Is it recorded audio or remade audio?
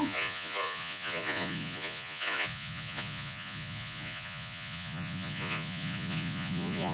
remade